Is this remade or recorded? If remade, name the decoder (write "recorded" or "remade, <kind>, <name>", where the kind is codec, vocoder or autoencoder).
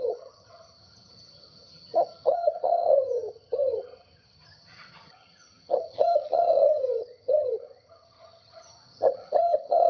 remade, vocoder, HiFi-GAN